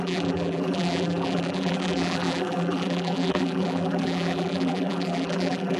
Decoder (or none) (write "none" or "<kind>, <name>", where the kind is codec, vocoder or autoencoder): vocoder, BigVGAN v2